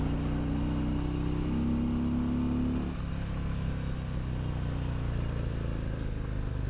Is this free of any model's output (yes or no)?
yes